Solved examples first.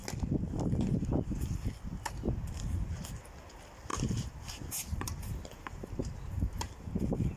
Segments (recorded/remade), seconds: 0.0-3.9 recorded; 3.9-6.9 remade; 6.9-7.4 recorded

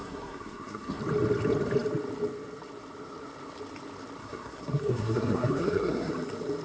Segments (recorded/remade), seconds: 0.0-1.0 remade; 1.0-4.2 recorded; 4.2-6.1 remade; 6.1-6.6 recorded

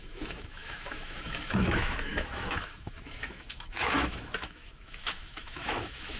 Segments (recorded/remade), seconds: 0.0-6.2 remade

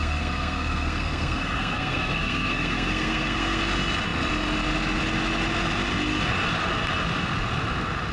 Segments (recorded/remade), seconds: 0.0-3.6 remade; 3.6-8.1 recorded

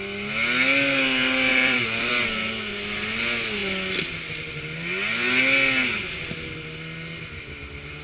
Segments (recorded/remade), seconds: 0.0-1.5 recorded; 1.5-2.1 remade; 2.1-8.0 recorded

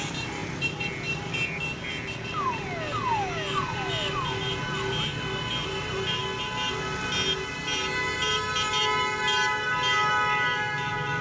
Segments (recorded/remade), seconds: 0.0-11.2 recorded

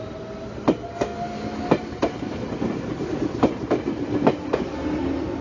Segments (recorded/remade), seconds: 0.0-5.4 recorded

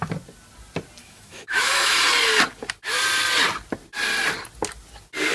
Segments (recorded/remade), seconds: 0.0-1.0 recorded; 1.0-2.0 remade; 2.0-5.3 recorded